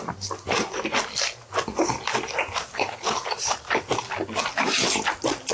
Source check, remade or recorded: recorded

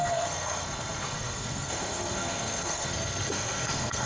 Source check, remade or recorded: remade